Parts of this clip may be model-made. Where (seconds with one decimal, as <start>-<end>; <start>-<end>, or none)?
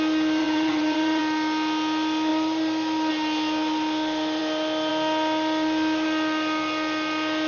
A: 0.4-1.2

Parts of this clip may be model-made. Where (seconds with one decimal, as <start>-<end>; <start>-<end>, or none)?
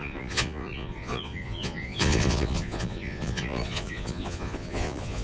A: 0.0-5.2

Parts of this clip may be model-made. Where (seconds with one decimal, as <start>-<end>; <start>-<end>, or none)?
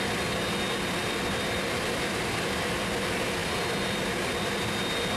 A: 1.0-2.8; 3.4-4.7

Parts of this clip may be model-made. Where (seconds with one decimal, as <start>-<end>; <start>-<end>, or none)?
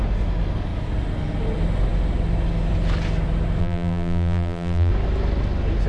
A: 3.6-4.9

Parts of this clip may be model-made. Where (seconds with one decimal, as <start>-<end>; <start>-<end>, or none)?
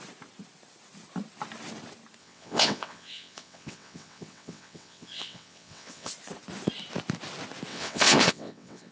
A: 2.2-6.1; 7.7-8.9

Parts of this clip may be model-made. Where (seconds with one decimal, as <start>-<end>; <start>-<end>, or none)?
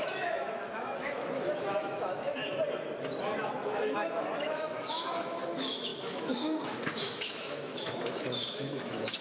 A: 0.0-2.4; 3.4-9.2